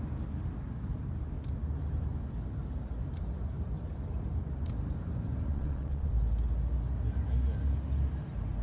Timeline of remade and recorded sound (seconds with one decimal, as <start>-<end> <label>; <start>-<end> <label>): 0.0-5.5 recorded; 5.5-6.1 remade; 6.1-8.6 recorded